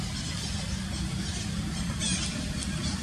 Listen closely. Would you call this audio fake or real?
real